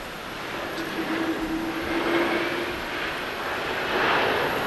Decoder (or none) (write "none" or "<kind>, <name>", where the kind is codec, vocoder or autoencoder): none